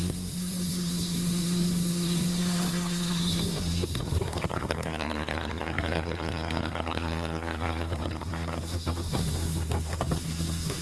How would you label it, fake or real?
fake